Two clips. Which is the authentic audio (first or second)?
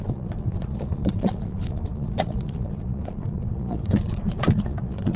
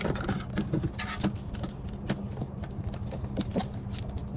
second